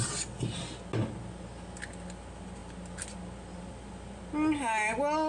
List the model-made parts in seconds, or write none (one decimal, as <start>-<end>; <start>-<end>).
none